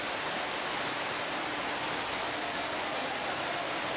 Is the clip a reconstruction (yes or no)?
no